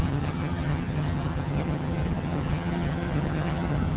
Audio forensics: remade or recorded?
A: remade